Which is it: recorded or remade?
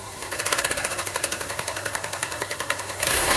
remade